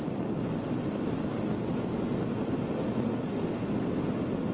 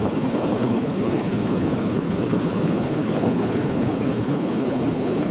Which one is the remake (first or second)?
second